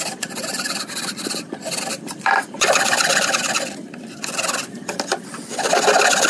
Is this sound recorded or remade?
remade